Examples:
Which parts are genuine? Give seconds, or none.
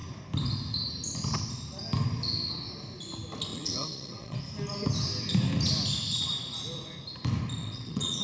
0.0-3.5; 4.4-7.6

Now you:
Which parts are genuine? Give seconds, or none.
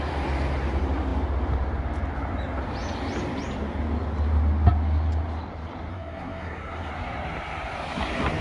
0.0-5.9; 6.9-8.4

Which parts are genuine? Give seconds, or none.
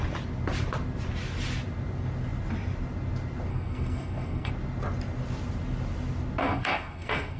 0.0-3.5; 4.5-6.4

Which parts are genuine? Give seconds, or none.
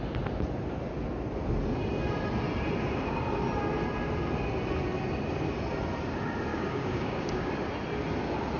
0.0-6.5; 7.5-8.6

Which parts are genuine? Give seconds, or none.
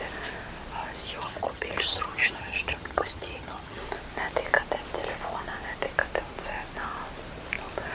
0.0-1.2; 3.8-7.9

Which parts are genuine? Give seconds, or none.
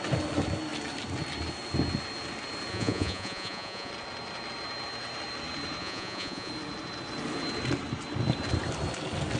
0.0-2.7; 3.9-5.8; 6.5-9.4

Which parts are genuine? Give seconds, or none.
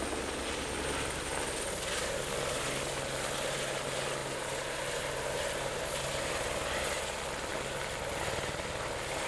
0.0-4.2; 5.8-9.3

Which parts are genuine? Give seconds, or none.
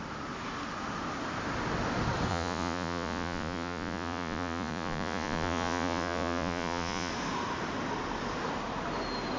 0.0-2.3; 7.1-9.4